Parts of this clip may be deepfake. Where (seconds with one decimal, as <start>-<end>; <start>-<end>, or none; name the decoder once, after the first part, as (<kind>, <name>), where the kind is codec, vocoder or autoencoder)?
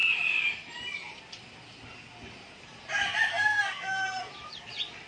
3.3-4.3 (codec, SNAC)